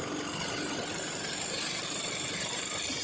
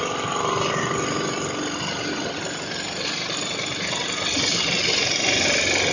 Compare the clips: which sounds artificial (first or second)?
first